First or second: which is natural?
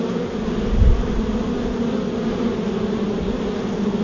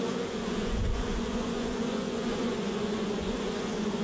first